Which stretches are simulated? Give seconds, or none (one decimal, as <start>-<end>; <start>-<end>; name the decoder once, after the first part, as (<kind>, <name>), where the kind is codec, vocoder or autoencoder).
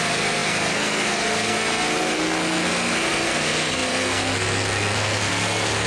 0.0-5.9 (codec, SNAC)